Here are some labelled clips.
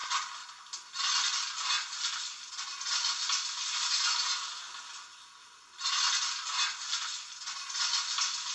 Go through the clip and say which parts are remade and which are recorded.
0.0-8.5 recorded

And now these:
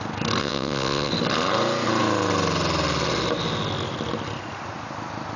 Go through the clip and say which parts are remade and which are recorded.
0.0-0.4 recorded; 0.4-1.1 remade; 1.1-5.4 recorded